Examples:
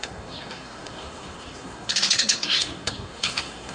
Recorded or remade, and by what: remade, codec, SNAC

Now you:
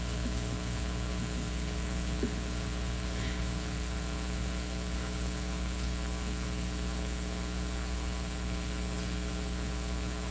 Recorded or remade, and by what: remade, codec, HILCodec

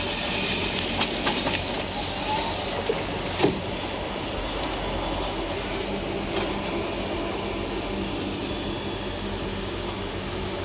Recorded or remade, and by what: recorded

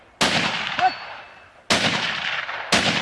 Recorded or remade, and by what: recorded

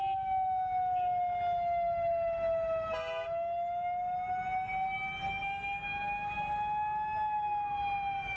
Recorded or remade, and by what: recorded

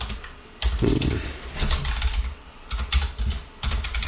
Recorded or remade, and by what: recorded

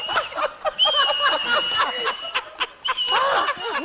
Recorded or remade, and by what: recorded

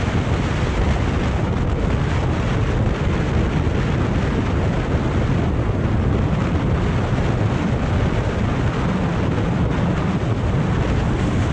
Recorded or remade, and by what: recorded